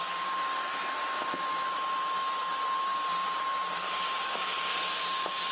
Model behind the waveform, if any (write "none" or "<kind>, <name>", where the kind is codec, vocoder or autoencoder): vocoder, BigVGAN v2